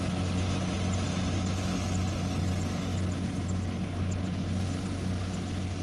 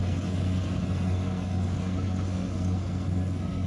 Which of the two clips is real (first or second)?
first